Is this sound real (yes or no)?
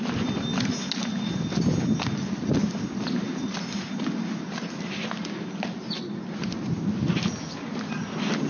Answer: yes